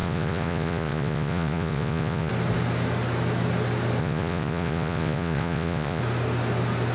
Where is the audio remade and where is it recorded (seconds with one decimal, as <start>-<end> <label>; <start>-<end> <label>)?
0.0-2.3 remade; 2.3-4.0 recorded; 4.0-6.0 remade; 6.0-6.9 recorded